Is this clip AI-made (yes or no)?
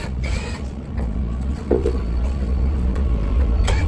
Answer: yes